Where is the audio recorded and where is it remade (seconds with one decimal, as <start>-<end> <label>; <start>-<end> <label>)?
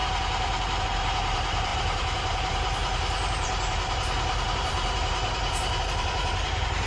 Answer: 0.0-0.8 recorded; 0.8-6.9 remade